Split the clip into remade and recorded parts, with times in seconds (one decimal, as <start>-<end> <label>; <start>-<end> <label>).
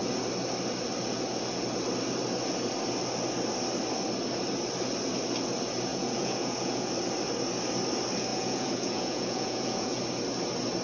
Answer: 0.0-5.9 recorded; 5.9-6.9 remade; 6.9-8.3 recorded; 8.3-10.0 remade; 10.0-10.8 recorded